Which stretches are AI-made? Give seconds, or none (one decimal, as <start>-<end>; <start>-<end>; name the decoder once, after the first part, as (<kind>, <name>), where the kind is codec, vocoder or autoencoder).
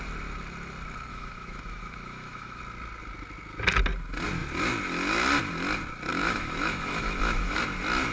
1.1-2.6 (autoencoder, DAC-VAE); 6.1-7.6